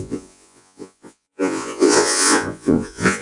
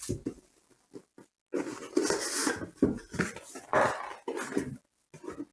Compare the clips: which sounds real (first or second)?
second